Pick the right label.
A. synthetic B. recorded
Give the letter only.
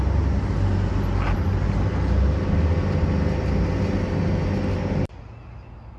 B